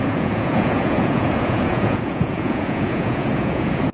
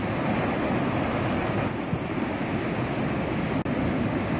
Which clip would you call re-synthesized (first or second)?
first